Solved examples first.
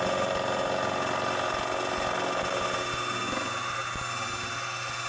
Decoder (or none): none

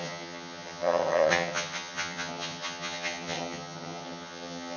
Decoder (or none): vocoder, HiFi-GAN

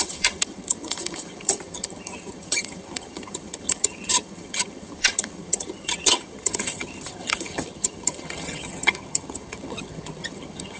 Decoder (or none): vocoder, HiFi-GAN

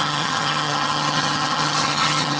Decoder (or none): vocoder, HiFi-GAN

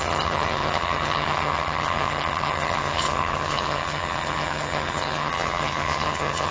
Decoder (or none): vocoder, HiFi-GAN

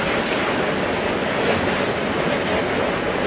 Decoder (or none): none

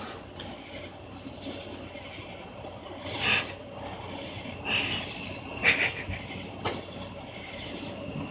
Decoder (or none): none